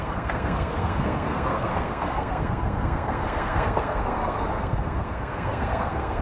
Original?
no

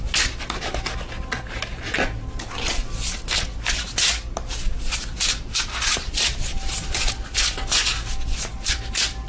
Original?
yes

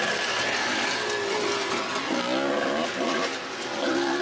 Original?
yes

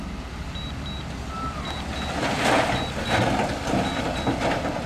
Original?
yes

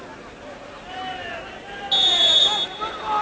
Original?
yes